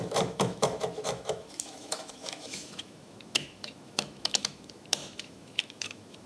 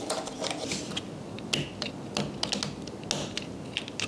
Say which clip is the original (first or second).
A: second